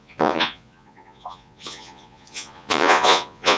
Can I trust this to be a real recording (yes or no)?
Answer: no